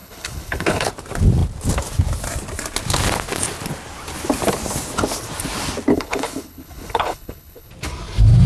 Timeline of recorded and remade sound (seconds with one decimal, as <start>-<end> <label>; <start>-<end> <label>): 0.0-0.9 remade; 0.9-5.9 recorded; 5.9-7.7 remade; 7.7-8.5 recorded